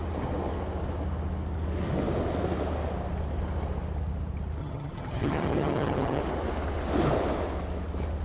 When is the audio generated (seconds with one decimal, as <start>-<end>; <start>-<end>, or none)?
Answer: 4.6-6.2